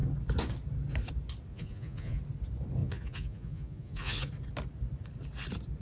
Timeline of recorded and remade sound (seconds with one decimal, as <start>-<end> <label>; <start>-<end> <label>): 0.0-1.5 recorded; 1.5-2.2 remade; 2.2-2.8 recorded; 2.8-4.3 remade; 4.3-5.8 recorded